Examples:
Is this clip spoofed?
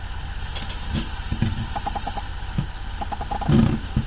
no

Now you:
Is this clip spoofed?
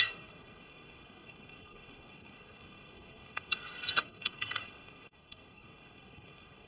yes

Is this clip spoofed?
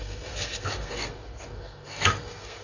yes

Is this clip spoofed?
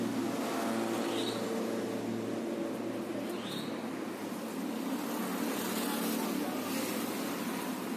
no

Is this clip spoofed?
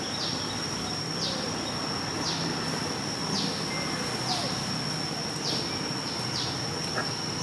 no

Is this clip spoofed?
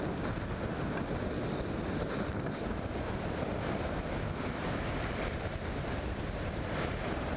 no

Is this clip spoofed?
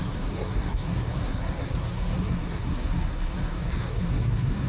yes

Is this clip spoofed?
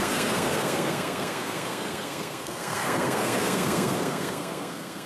yes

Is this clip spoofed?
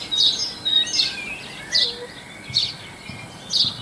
no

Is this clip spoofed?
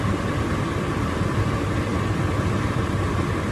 no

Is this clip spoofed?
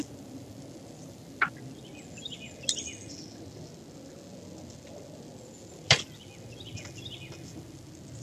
no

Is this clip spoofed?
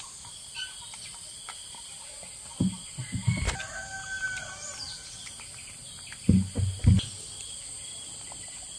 no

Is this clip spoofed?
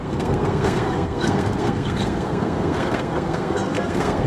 yes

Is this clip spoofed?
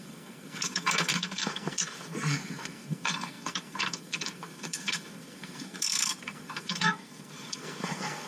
yes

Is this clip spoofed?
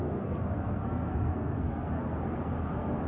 yes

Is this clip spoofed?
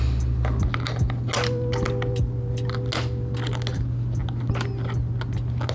no